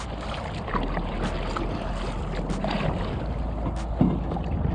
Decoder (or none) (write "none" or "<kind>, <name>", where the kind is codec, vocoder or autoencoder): none